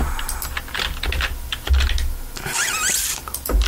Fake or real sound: real